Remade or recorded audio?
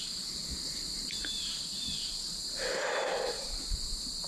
recorded